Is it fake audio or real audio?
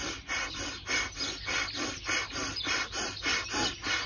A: real